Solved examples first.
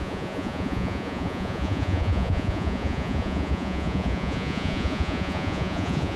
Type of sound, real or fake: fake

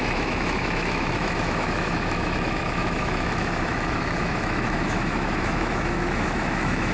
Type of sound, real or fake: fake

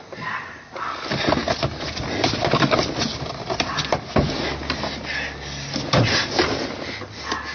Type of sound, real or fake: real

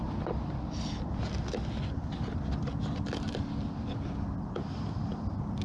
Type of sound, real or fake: real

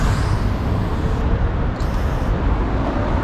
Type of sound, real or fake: real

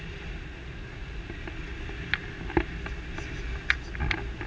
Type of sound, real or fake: real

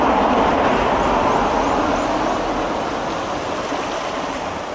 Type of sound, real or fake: real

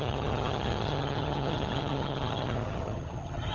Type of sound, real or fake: fake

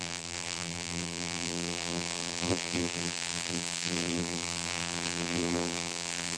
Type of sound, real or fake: fake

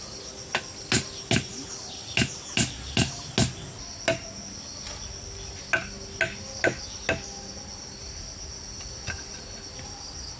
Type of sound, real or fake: real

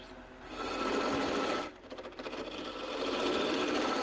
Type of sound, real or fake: fake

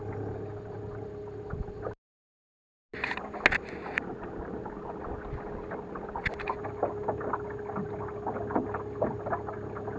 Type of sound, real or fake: real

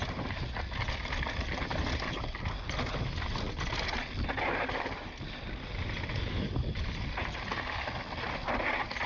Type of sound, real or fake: real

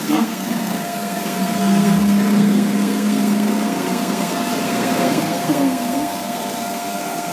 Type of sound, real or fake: fake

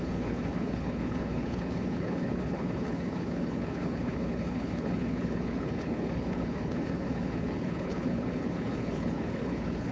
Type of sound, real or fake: fake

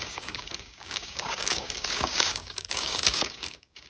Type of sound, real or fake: fake